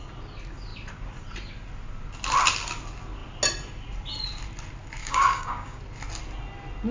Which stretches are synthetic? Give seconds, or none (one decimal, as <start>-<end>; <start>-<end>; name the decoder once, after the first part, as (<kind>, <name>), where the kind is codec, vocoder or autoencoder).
5.0-5.8 (codec, DAC)